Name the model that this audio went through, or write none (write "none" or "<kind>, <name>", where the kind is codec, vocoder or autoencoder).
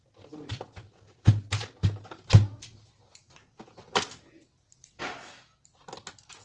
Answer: none